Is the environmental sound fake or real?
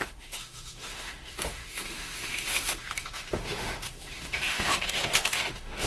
fake